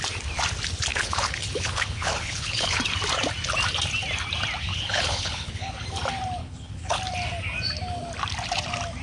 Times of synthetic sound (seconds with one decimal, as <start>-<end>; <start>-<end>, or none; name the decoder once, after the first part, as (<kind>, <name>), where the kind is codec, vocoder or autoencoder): 0.9-2.8 (codec, HILCodec); 4.7-5.7; 6.4-7.0